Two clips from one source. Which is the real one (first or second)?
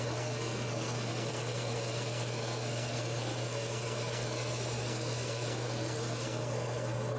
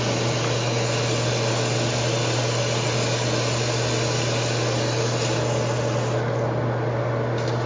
second